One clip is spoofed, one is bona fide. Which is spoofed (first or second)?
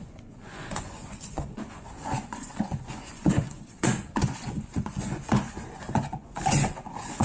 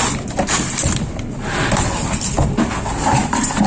first